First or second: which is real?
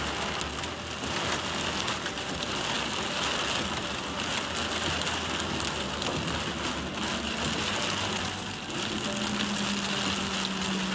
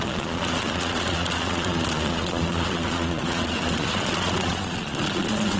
first